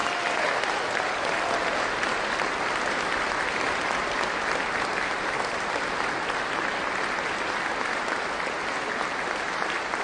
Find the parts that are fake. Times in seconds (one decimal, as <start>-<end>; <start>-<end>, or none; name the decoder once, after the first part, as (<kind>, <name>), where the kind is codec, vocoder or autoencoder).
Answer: none